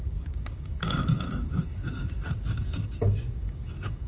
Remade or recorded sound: remade